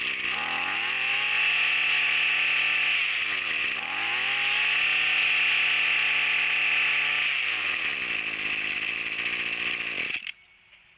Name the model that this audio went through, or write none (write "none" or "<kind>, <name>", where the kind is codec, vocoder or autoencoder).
none